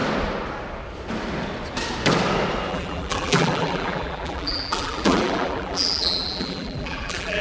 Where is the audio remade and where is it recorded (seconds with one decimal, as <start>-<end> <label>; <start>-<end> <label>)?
0.0-2.7 recorded; 2.7-7.4 remade